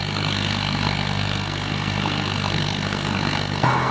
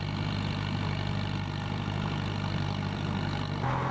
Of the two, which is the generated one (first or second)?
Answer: first